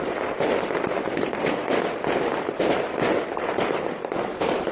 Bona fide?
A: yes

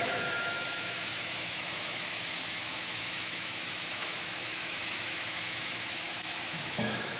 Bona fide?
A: no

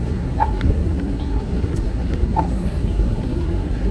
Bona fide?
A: no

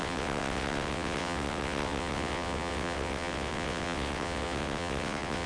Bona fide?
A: no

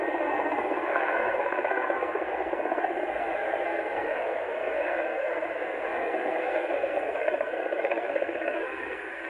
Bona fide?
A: no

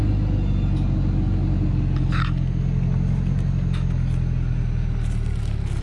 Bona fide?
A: yes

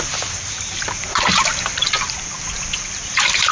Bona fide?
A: no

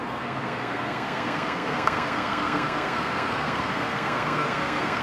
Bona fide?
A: no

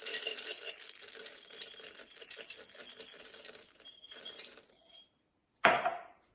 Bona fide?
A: yes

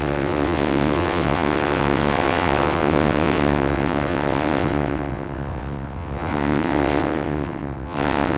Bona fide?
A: no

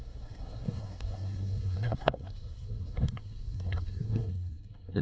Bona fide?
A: no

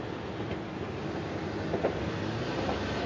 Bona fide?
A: yes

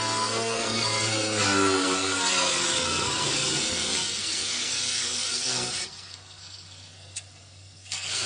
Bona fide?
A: no